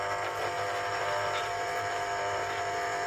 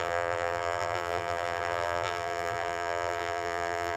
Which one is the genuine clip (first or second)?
first